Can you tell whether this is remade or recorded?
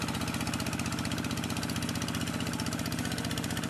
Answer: recorded